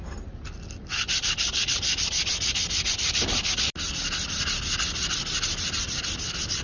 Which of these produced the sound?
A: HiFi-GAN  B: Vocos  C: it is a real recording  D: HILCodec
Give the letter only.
C